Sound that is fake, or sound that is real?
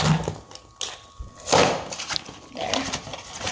real